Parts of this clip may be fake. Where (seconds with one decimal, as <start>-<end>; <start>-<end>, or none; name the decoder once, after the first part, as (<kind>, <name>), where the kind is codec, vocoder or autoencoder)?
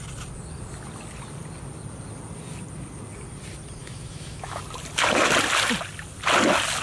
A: 3.8-4.6 (autoencoder, DAC-VAE)